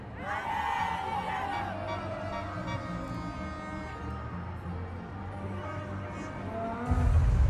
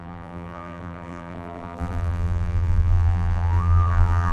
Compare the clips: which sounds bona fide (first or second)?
first